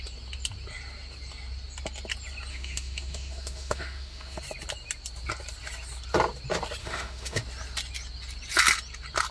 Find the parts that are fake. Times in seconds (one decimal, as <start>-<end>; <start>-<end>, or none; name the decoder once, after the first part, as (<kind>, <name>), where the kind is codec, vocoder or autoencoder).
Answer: 2.5-4.4 (autoencoder, DAC-VAE); 6.8-7.4